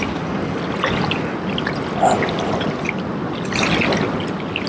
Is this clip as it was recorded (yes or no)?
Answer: yes